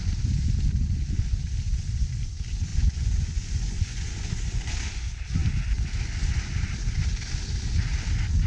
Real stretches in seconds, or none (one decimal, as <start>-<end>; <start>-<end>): 0.0-2.7; 4.7-8.5